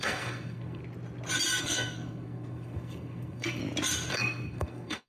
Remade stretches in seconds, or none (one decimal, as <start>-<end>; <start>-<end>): 0.0-0.8; 1.6-3.6; 4.1-5.1